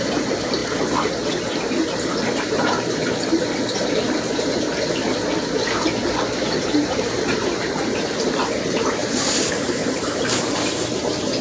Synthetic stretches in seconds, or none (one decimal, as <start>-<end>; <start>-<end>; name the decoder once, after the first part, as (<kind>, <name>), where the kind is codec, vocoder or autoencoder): 0.0-0.6 (vocoder, BigVGAN v2); 1.5-5.3; 6.6-11.4